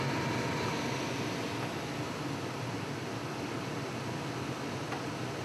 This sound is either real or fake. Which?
real